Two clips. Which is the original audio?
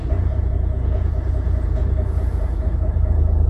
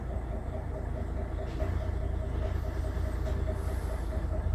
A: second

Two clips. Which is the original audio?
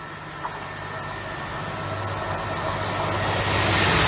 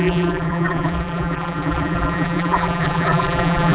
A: first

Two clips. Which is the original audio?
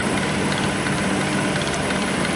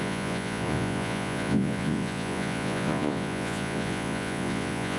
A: first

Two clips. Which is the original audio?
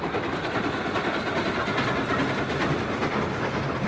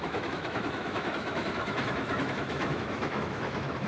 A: first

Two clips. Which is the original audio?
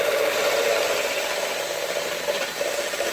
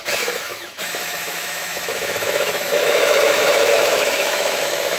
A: first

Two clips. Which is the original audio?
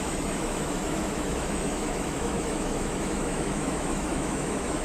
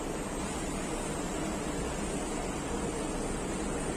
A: second